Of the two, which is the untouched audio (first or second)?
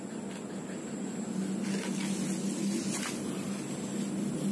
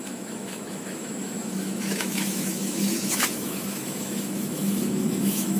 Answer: first